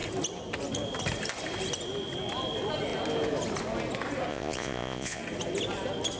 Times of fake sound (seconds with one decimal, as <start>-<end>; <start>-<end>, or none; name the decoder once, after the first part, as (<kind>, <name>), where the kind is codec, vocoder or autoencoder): 4.3-5.2 (vocoder, Vocos)